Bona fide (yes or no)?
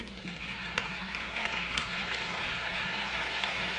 no